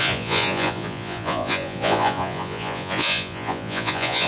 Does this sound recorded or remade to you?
remade